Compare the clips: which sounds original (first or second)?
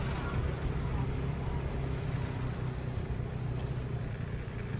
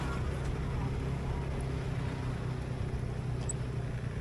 second